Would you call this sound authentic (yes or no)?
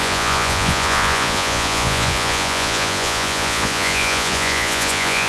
no